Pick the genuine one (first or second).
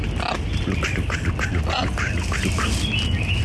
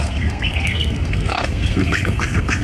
first